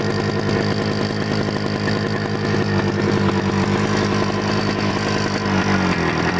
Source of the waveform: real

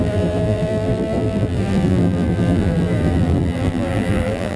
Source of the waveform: fake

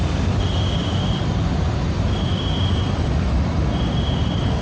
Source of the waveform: fake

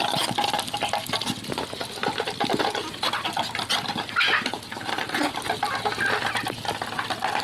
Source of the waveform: real